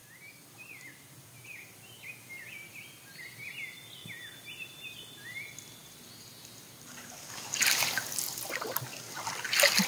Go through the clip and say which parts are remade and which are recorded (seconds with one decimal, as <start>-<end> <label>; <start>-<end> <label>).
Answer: 0.0-9.9 recorded